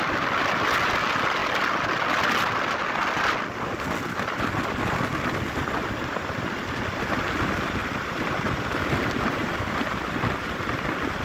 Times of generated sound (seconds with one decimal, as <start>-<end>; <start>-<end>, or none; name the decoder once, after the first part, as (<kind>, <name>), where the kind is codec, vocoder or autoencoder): 7.8-9.9 (vocoder, BigVGAN v2)